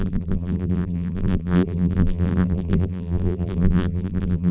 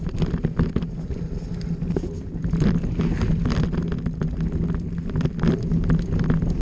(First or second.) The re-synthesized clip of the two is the first